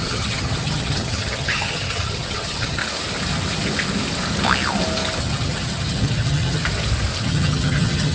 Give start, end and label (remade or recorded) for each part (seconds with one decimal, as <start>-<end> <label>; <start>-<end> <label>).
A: 0.0-2.8 remade; 2.8-5.2 recorded; 5.2-6.6 remade; 6.6-7.2 recorded; 7.2-8.1 remade